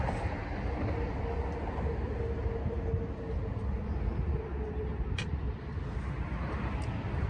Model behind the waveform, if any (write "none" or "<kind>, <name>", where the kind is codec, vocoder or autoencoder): none